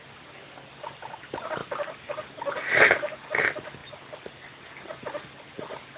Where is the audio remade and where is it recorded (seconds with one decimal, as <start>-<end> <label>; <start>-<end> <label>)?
0.0-6.0 recorded